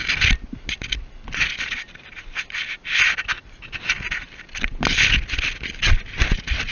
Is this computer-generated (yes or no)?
no